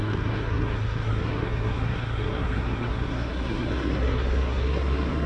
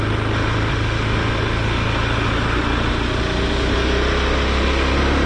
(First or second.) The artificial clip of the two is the first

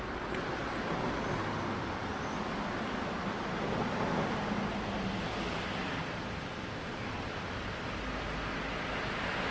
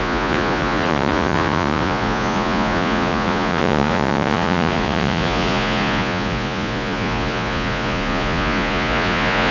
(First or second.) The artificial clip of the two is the second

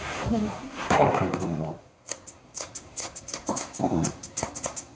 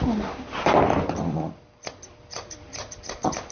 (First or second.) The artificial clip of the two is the first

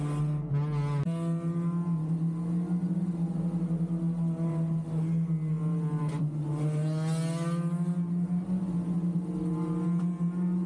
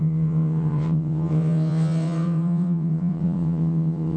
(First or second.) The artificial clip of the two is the second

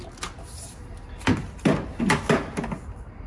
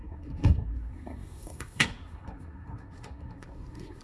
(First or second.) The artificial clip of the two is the second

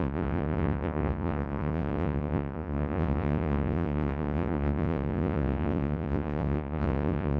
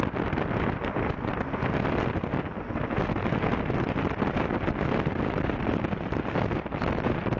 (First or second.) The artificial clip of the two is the first